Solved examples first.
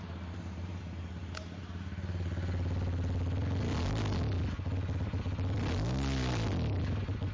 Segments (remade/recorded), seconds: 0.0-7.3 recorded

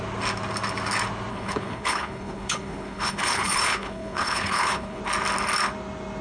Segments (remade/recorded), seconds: 0.0-1.3 recorded; 1.3-5.0 remade; 5.0-6.2 recorded

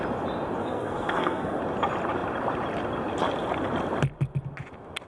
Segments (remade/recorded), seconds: 0.0-0.6 recorded; 0.6-1.6 remade; 1.6-5.1 recorded

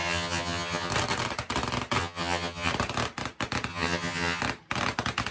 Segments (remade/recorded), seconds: 0.0-0.9 remade; 0.9-2.0 recorded; 2.0-2.7 remade; 2.7-3.7 recorded; 3.7-4.4 remade; 4.4-5.3 recorded

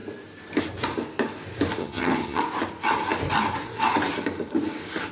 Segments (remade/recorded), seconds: 0.0-1.8 recorded; 1.8-2.4 remade; 2.4-5.1 recorded